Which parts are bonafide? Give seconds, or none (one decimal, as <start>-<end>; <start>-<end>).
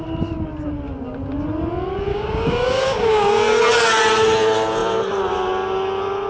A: 0.0-2.1; 3.6-6.3